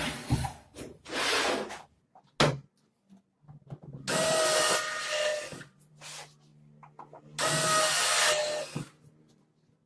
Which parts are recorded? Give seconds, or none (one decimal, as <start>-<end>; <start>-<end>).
0.0-9.9